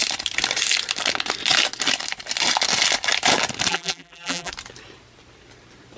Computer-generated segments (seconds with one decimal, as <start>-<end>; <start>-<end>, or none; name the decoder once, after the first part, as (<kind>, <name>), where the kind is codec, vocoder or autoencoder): 3.7-4.5 (vocoder, BigVGAN v2)